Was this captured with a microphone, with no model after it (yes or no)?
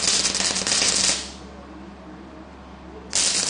yes